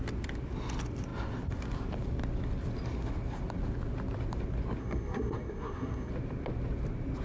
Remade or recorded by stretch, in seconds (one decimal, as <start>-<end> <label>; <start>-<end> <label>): 0.0-4.8 recorded; 4.8-6.1 remade; 6.1-7.2 recorded